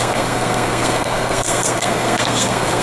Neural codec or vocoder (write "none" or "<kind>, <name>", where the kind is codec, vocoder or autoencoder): codec, SNAC